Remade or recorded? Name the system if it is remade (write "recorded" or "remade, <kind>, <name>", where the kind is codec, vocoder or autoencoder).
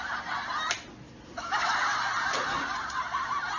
recorded